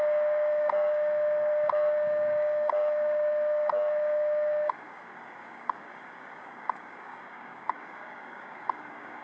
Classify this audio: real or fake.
fake